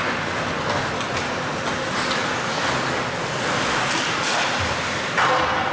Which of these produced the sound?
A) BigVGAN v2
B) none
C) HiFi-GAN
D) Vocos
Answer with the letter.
B